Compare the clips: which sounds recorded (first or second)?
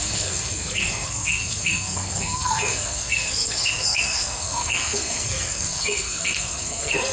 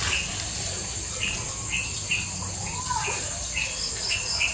second